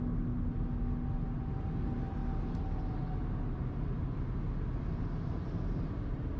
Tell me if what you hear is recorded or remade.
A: recorded